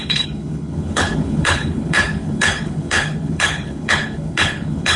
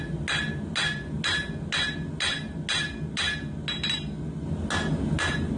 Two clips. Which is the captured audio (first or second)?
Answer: second